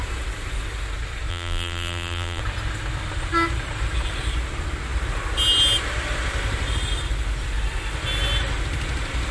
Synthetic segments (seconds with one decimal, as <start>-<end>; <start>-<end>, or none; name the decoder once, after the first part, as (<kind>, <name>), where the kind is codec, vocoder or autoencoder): 1.3-2.4 (vocoder, BigVGAN v2)